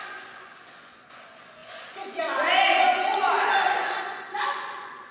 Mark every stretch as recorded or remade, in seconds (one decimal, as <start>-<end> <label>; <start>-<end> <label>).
0.0-5.1 remade